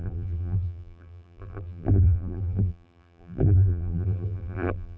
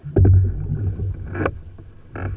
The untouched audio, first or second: second